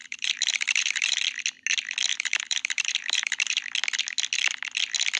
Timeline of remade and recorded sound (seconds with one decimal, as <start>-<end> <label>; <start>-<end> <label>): 0.0-1.2 remade; 1.2-2.1 recorded; 2.1-3.6 remade; 3.6-5.2 recorded